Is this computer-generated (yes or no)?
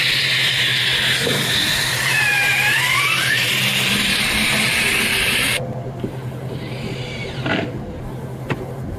yes